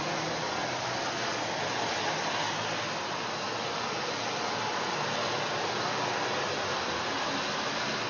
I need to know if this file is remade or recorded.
recorded